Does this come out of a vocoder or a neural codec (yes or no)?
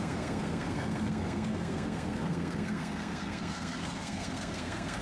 yes